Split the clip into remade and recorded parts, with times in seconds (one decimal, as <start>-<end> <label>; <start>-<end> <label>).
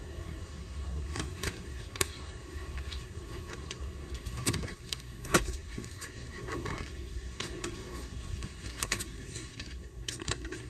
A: 0.0-10.7 remade